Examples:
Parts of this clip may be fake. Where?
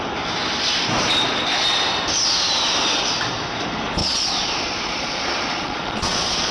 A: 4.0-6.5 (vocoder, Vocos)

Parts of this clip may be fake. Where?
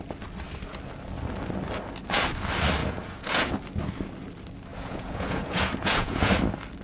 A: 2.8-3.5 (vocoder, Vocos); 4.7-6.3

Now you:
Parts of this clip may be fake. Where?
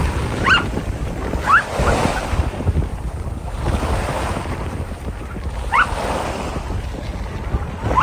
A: none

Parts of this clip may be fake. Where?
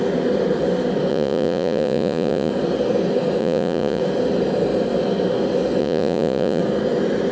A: 1.1-2.5 (vocoder, Vocos); 3.4-4.0; 5.8-6.6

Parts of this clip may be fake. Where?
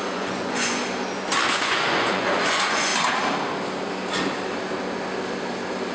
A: 0.0-0.8 (vocoder, Vocos); 1.5-2.9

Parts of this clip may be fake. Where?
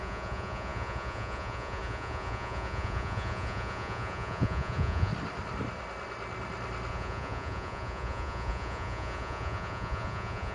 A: 0.0-5.1 (vocoder, Vocos); 6.9-10.5